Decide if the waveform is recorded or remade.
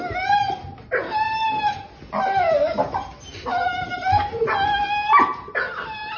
recorded